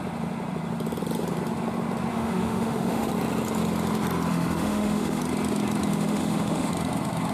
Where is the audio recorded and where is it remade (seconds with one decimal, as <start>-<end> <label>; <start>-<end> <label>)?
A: 0.0-2.1 recorded; 2.1-3.1 remade; 3.1-4.3 recorded; 4.3-5.2 remade; 5.2-5.9 recorded; 5.9-6.7 remade; 6.7-7.3 recorded